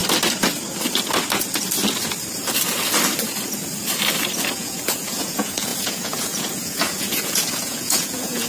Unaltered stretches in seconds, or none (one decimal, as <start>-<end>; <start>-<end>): 0.0-4.5